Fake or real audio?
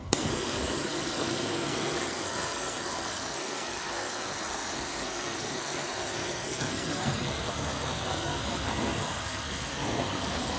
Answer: fake